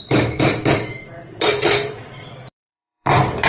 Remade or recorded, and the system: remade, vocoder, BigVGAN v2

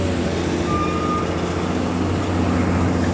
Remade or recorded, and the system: recorded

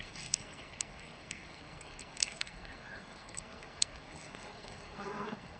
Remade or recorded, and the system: remade, codec, SNAC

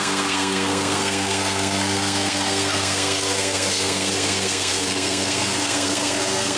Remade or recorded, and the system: remade, codec, SNAC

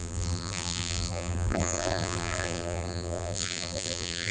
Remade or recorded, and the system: remade, vocoder, BigVGAN v2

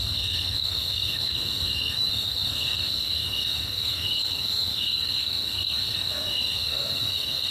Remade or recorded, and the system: remade, codec, SNAC